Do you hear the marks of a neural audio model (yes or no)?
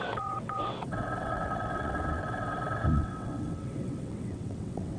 yes